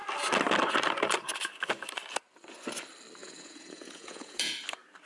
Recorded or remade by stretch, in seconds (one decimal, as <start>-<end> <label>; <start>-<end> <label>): 0.0-3.2 recorded; 3.2-4.5 remade; 4.5-5.1 recorded